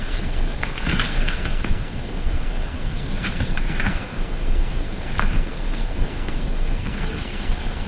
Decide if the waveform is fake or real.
fake